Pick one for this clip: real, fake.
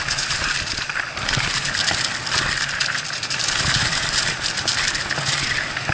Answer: real